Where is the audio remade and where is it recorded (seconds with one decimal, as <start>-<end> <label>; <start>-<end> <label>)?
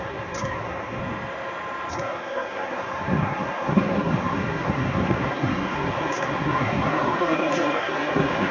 0.0-1.0 remade; 1.0-1.9 recorded; 1.9-8.5 remade